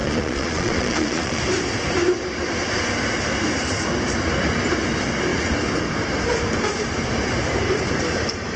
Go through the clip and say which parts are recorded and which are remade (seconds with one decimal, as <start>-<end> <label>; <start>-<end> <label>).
0.0-1.4 remade; 1.4-8.6 recorded